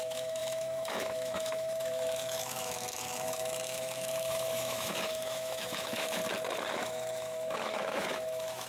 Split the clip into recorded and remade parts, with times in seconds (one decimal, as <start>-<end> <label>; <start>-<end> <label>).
0.0-6.2 remade; 6.2-6.7 recorded; 6.7-8.7 remade